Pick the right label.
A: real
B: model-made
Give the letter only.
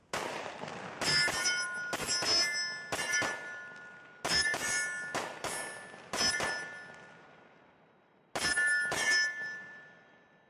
A